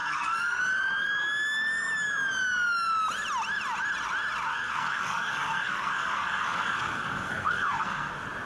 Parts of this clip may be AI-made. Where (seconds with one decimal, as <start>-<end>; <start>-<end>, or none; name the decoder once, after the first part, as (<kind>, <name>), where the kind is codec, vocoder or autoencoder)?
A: 0.0-0.6 (codec, SNAC); 4.5-8.1